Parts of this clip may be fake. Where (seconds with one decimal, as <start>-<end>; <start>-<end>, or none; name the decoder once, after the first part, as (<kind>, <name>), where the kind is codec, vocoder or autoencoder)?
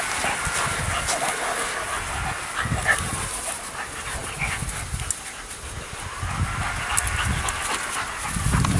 none